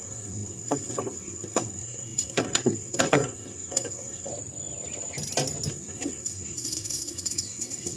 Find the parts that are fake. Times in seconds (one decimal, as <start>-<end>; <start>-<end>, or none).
0.0-4.3; 5.7-8.0